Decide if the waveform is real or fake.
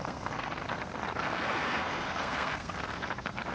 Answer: fake